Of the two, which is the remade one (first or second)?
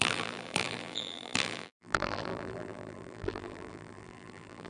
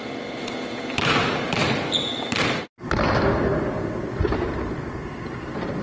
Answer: first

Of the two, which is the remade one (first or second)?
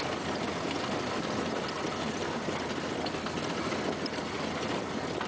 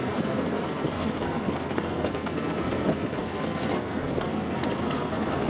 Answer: second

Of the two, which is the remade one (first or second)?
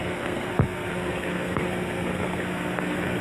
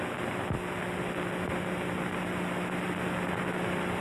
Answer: first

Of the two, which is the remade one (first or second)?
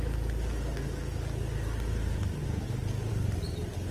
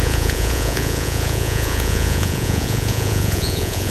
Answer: second